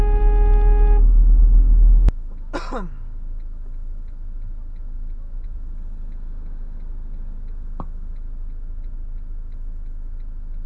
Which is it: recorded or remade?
recorded